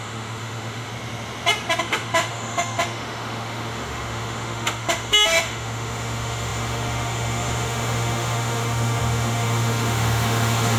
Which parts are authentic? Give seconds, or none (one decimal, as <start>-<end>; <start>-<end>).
0.9-1.8